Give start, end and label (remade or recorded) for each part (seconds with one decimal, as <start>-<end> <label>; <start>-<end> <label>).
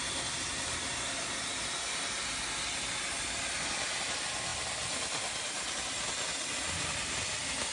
0.0-7.7 recorded